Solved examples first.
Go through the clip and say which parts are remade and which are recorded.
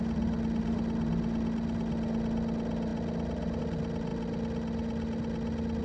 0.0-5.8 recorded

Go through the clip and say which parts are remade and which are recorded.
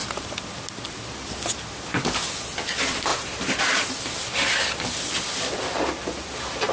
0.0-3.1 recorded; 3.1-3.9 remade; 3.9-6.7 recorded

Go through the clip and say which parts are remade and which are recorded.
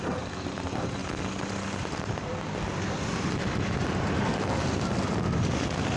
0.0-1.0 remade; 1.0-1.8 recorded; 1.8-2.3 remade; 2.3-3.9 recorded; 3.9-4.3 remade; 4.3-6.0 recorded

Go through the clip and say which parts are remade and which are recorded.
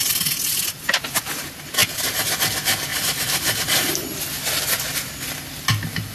0.0-1.8 recorded; 1.8-2.4 remade; 2.4-2.9 recorded; 2.9-3.9 remade; 3.9-6.1 recorded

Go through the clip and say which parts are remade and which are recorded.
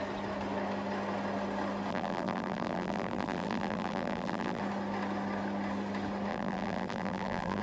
0.0-1.9 recorded; 1.9-4.6 remade; 4.6-6.3 recorded; 6.3-7.6 remade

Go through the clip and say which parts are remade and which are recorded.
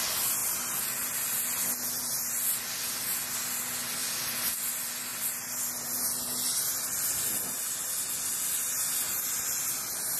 0.0-10.2 recorded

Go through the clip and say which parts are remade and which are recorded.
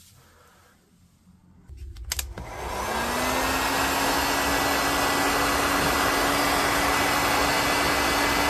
0.0-8.5 recorded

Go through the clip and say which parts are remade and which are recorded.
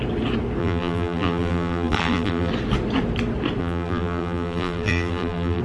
0.0-0.6 recorded; 0.6-2.5 remade; 2.5-3.6 recorded; 3.6-5.6 remade